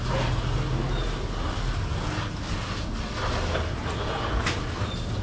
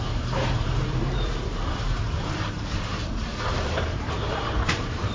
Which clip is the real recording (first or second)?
first